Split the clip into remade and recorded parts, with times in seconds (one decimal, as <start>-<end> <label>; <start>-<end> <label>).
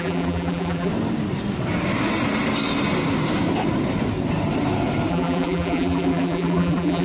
0.0-0.9 remade; 0.9-5.1 recorded; 5.1-7.0 remade